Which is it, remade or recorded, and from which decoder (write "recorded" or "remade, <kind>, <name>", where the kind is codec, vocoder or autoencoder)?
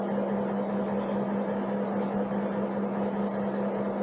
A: recorded